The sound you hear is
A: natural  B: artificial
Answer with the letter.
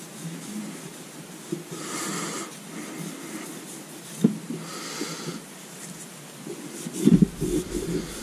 A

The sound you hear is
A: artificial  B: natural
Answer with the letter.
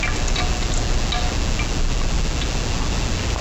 B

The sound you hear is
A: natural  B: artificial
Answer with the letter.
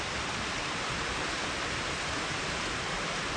A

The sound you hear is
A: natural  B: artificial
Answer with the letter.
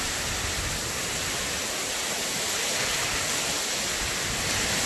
A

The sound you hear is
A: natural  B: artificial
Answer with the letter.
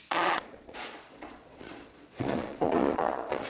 B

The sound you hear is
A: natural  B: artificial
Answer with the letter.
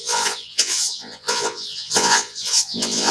B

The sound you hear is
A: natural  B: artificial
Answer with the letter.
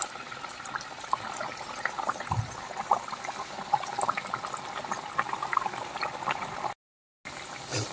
A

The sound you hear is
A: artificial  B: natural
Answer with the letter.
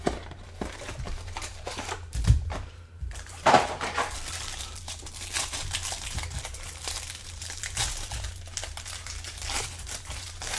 A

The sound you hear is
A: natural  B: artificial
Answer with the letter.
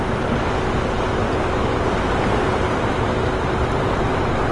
A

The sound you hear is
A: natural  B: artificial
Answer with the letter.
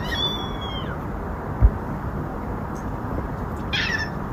A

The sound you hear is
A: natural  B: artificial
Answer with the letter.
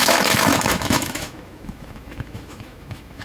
B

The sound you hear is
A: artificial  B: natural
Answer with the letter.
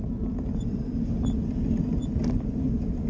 B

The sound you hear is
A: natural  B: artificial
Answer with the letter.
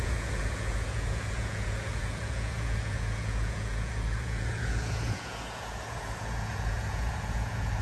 B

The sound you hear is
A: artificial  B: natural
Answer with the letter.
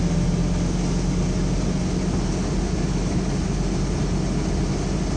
B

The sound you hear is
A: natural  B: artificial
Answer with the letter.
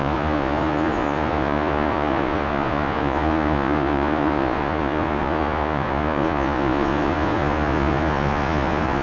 B